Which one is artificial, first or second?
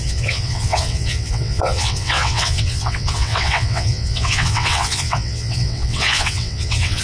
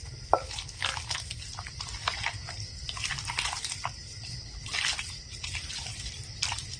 first